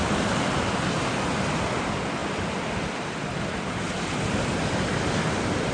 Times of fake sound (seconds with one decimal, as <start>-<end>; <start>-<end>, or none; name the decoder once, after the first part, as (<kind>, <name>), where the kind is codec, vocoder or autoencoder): none